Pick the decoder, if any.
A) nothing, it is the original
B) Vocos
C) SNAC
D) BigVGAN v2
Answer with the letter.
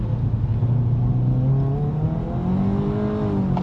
A